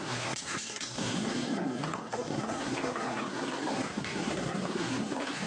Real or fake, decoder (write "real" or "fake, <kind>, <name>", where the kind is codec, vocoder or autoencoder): fake, codec, SNAC